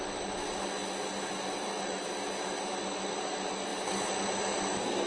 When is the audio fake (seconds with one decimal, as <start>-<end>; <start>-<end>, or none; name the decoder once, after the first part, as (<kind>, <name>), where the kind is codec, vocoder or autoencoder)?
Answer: none